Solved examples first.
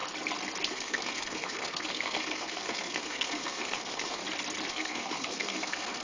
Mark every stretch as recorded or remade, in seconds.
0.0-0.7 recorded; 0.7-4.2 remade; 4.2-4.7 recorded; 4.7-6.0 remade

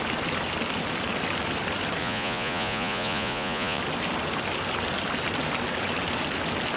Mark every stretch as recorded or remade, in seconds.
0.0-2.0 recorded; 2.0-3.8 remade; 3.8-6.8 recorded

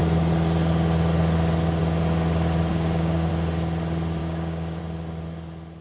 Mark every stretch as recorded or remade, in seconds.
0.0-2.7 recorded; 2.7-3.3 remade; 3.3-4.2 recorded; 4.2-4.8 remade; 4.8-5.8 recorded